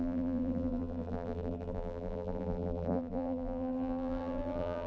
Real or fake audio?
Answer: fake